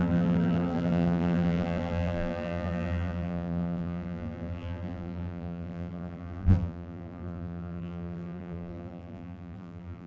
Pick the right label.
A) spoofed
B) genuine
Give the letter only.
A